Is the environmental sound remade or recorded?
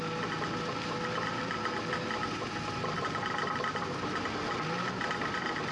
recorded